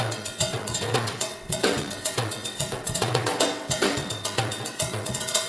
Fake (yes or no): yes